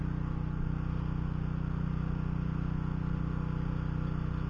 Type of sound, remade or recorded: recorded